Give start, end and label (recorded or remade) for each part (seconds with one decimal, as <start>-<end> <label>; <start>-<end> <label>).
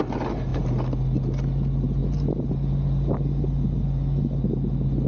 0.0-5.1 recorded